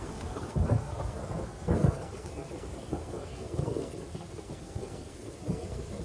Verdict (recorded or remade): remade